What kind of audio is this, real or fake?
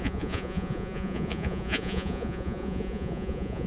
fake